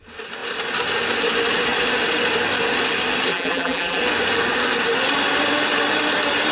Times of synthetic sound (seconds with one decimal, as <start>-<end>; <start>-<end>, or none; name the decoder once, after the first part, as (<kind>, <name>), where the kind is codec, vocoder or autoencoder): 3.3-4.0 (vocoder, BigVGAN v2)